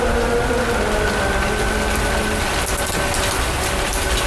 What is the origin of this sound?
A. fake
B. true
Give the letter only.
B